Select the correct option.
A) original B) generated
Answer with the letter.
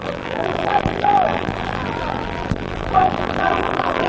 B